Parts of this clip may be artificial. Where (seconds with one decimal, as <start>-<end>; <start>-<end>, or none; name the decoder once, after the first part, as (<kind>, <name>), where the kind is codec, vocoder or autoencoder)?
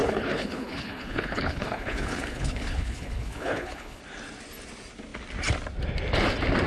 0.0-4.0 (codec, HILCodec)